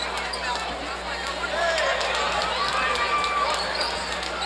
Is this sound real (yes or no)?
yes